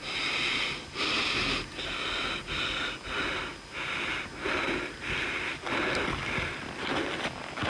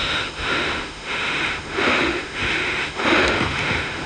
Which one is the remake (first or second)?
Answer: second